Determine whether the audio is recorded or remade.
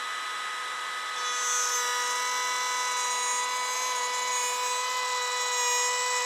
recorded